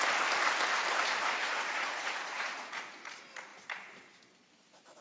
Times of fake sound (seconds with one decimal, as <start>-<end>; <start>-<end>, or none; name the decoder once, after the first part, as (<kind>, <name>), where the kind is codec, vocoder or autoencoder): 1.4-2.8 (vocoder, Vocos)